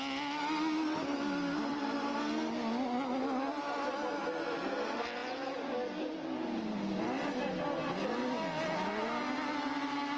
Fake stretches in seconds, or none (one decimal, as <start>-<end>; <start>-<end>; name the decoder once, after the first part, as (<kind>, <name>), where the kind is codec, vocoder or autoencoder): 1.7-2.2 (vocoder, BigVGAN v2)